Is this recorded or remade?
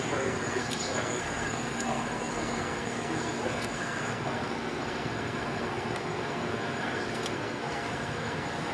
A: remade